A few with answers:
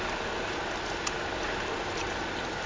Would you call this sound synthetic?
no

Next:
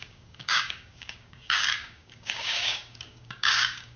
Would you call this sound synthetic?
yes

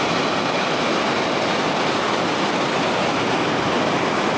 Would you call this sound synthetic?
no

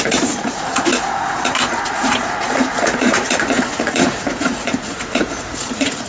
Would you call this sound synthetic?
yes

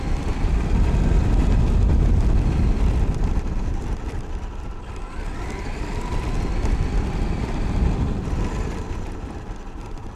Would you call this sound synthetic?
no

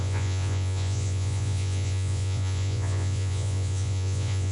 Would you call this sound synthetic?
yes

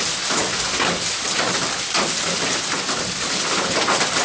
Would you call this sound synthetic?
no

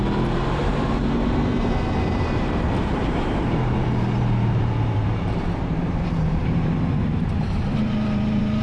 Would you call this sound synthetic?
yes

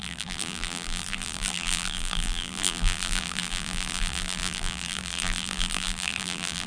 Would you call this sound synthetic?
yes